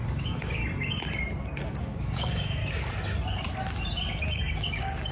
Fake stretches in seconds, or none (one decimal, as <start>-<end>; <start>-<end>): 0.0-0.6; 1.8-2.6; 4.2-5.1